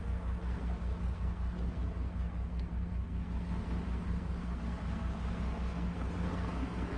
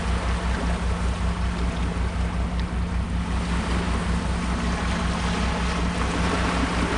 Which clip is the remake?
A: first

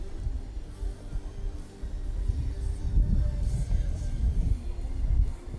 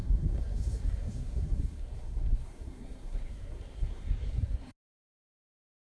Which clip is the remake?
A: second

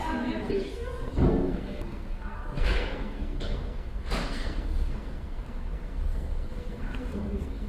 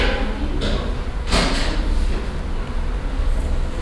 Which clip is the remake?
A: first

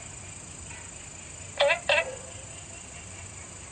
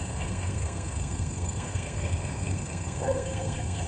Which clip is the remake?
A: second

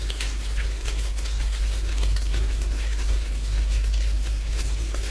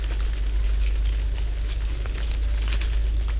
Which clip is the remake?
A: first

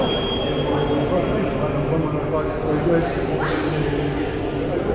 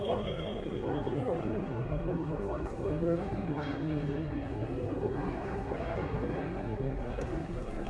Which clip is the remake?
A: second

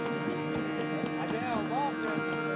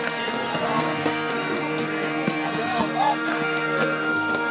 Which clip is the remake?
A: second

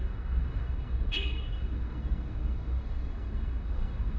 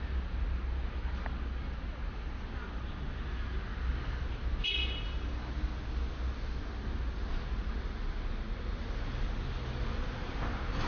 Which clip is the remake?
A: first